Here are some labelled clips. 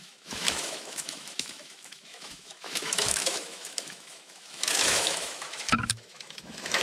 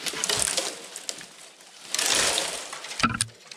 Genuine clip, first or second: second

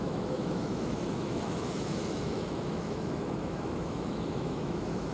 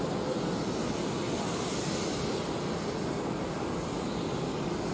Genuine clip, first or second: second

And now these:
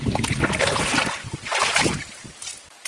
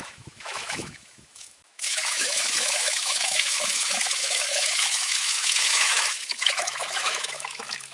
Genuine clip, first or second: first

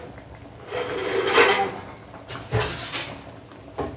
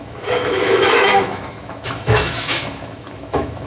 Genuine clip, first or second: first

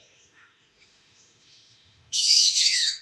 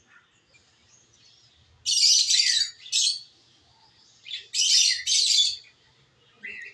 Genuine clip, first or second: second